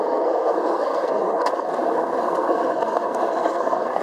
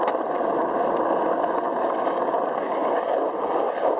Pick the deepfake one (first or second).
first